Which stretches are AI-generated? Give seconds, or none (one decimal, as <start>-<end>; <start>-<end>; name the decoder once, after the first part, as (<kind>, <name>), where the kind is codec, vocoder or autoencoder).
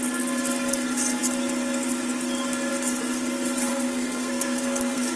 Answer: 3.7-5.2 (codec, SNAC)